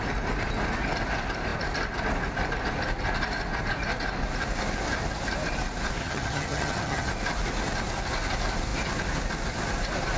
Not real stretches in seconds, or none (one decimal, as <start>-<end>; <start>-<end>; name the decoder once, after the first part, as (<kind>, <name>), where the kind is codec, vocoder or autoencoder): 6.0-7.1 (vocoder, HiFi-GAN)